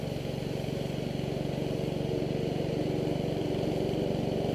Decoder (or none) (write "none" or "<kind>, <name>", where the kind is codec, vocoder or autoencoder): none